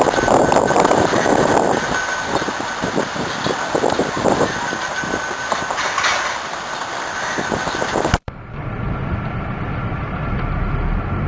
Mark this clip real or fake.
real